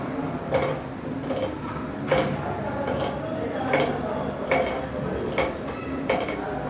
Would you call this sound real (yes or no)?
yes